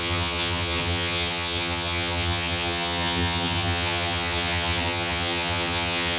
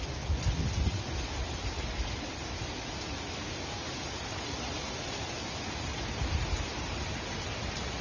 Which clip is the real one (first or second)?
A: second